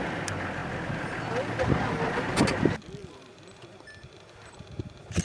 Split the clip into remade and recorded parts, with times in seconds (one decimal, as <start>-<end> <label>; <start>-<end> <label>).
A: 0.0-3.0 recorded; 3.0-5.2 remade